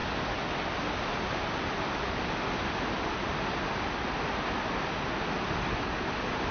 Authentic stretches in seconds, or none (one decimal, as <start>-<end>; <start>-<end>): 0.0-6.5